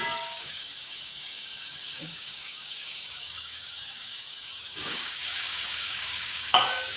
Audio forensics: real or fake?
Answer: fake